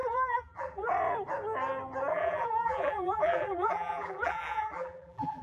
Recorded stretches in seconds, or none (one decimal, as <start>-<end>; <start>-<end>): 0.9-2.1